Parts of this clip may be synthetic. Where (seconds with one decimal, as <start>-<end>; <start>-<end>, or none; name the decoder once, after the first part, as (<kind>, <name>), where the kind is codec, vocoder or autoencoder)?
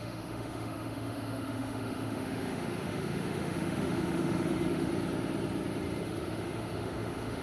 0.0-4.9 (autoencoder, DAC-VAE); 6.0-7.4